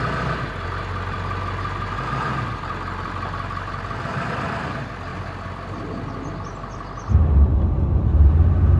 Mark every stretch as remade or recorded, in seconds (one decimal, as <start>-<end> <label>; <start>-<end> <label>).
0.0-8.8 recorded